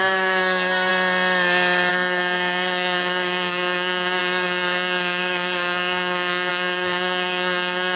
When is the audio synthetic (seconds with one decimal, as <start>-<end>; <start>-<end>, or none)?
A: 0.0-0.9; 1.9-8.0